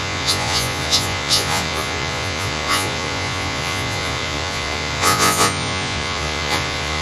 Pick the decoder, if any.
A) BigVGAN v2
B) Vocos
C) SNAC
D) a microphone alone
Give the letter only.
B